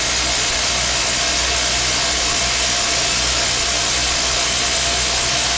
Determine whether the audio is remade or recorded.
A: recorded